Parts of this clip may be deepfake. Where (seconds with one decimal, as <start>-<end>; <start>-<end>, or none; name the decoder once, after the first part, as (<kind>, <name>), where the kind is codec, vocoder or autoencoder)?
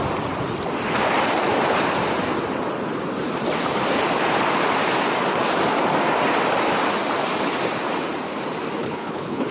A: 8.8-9.5 (codec, HILCodec)